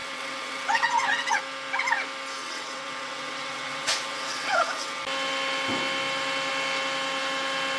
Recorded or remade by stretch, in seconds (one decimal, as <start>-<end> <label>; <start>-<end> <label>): 0.0-1.4 remade; 1.4-2.4 recorded; 2.4-5.0 remade; 5.0-7.8 recorded